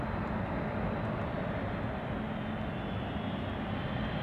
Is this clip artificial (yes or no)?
no